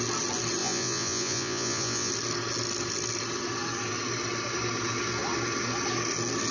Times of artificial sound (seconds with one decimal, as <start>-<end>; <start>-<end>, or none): 0.6-2.1